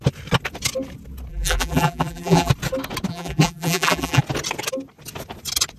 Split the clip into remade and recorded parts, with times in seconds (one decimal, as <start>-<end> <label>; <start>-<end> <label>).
0.0-1.3 recorded; 1.3-2.5 remade; 2.5-3.1 recorded; 3.1-4.2 remade; 4.2-5.8 recorded

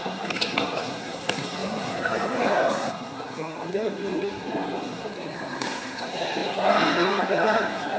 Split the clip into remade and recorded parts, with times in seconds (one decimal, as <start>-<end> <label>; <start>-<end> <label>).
0.0-8.0 remade

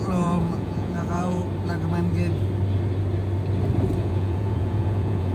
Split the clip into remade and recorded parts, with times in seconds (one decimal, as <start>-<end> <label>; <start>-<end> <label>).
0.0-1.4 remade; 1.4-4.0 recorded; 4.0-5.3 remade

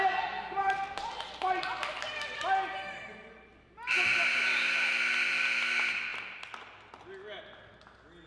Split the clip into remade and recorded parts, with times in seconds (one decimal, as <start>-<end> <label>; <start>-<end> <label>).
0.0-8.3 recorded